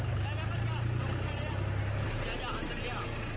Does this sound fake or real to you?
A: real